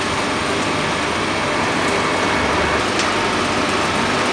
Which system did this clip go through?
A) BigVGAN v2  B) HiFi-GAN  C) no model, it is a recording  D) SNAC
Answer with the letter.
C